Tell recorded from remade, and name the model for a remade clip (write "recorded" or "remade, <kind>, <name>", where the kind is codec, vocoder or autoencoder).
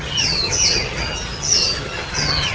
remade, vocoder, HiFi-GAN